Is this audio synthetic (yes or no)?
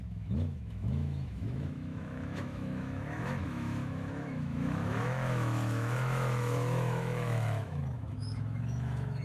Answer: yes